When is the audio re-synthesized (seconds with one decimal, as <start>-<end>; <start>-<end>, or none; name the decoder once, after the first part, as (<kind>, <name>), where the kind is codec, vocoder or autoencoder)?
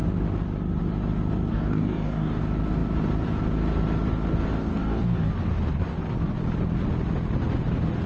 1.5-2.4 (codec, DAC); 4.6-5.3